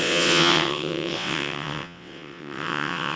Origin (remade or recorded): remade